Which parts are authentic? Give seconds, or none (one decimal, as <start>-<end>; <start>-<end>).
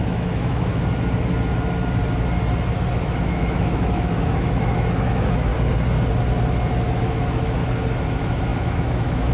0.7-2.9; 5.5-7.0; 7.6-8.1